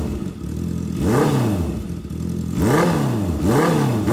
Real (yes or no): yes